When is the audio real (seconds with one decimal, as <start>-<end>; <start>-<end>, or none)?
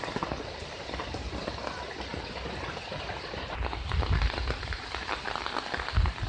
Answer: 0.0-6.3